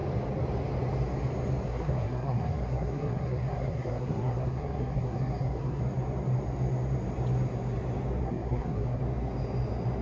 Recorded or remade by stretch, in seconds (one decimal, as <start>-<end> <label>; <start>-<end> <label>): 0.0-1.7 recorded; 1.7-5.8 remade; 5.8-8.2 recorded; 8.2-9.0 remade; 9.0-10.0 recorded